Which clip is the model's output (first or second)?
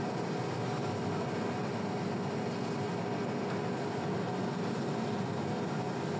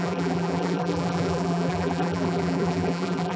second